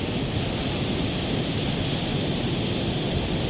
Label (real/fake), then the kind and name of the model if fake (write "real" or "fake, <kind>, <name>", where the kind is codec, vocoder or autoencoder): real